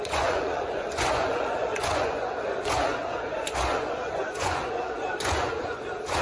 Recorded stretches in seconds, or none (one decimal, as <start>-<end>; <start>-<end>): none